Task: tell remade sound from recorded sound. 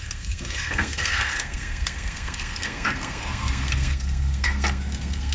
remade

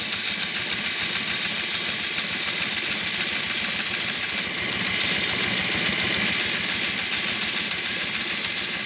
recorded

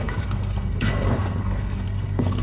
remade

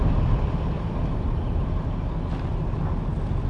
recorded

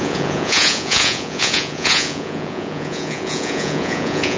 remade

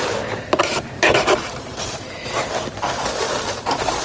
recorded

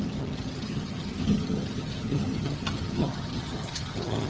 remade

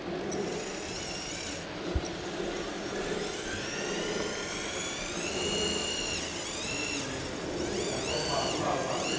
recorded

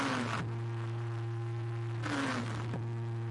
recorded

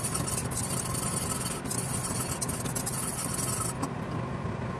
recorded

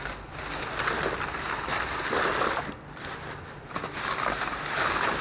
recorded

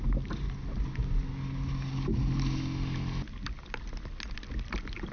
recorded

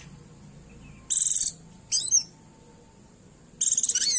recorded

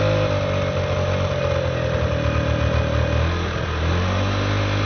recorded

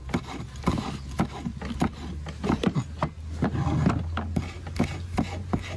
recorded